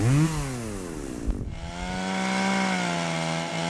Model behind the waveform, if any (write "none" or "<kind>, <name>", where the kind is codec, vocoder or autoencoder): none